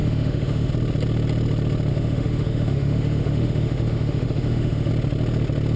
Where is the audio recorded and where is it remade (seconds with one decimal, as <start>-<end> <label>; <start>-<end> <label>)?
0.0-0.7 remade; 0.7-1.9 recorded; 1.9-4.9 remade; 4.9-5.8 recorded